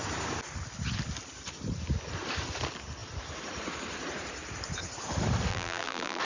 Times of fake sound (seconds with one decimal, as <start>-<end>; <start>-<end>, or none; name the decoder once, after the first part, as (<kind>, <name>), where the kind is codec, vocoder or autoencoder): 5.5-6.2 (vocoder, BigVGAN v2)